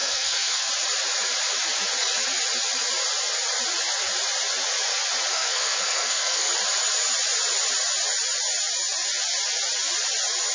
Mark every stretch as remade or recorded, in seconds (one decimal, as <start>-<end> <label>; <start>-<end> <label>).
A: 0.0-0.7 remade; 0.7-5.3 recorded; 5.3-6.5 remade; 6.5-10.5 recorded